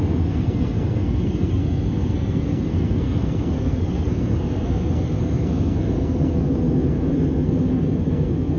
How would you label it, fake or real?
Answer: fake